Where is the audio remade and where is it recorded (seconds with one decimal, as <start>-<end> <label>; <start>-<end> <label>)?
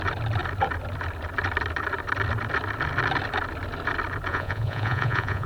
0.0-4.3 recorded; 4.3-5.5 remade